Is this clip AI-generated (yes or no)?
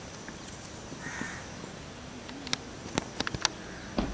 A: no